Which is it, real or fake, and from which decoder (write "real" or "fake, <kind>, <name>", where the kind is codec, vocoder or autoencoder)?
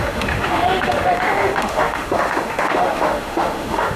fake, autoencoder, DAC-VAE